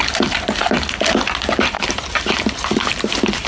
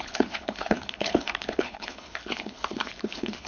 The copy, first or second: second